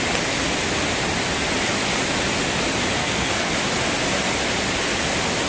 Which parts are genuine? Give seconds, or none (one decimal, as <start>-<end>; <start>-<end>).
0.0-3.0; 3.5-5.5